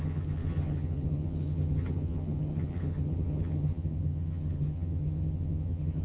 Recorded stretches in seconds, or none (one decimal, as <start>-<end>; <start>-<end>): none